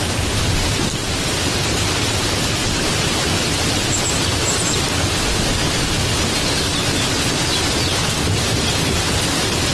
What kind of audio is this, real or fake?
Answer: real